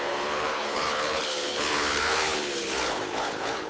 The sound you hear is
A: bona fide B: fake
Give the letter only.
B